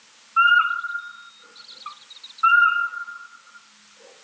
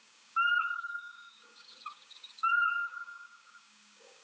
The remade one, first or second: second